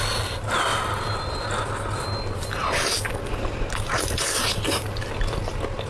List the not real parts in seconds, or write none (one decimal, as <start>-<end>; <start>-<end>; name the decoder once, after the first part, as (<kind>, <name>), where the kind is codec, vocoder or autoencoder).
0.7-1.6 (vocoder, BigVGAN v2)